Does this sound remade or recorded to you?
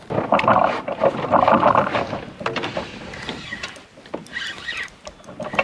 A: recorded